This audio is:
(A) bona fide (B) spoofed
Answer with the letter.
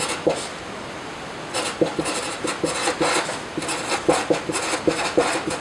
A